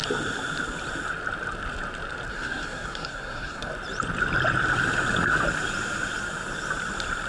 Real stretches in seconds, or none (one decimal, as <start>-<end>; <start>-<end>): 0.0-2.3; 3.7-7.3